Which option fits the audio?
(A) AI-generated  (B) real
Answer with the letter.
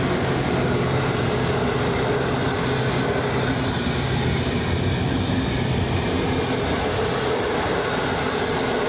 B